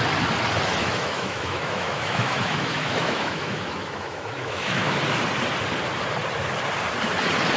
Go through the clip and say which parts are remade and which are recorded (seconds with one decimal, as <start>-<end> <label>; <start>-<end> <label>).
0.0-0.8 recorded; 0.8-5.0 remade; 5.0-7.6 recorded